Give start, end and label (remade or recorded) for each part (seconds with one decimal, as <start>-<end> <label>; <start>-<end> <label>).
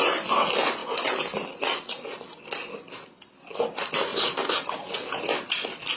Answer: 0.0-6.0 recorded